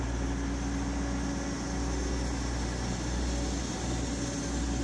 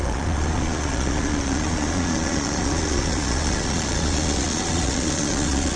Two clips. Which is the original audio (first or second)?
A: first